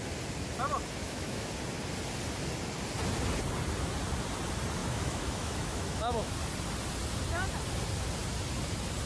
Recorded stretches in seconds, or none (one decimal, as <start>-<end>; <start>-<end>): 0.0-1.0; 1.5-4.8; 6.3-9.1